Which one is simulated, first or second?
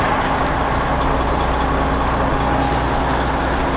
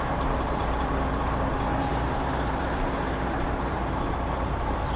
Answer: second